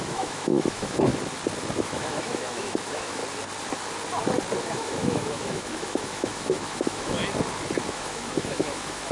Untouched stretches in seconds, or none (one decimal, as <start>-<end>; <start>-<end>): 1.1-1.8; 3.2-4.6; 7.2-7.9